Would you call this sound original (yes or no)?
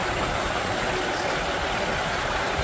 yes